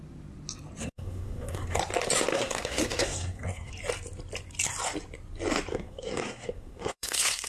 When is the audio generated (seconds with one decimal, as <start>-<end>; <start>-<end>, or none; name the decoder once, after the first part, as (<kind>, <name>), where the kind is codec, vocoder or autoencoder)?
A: 0.8-1.8 (codec, SNAC); 2.3-3.7; 5.7-7.5